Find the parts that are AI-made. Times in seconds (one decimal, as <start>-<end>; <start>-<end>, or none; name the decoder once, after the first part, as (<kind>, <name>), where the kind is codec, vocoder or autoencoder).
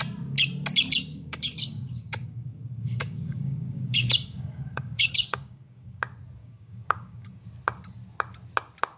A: 1.1-6.0 (codec, DAC); 6.4-7.4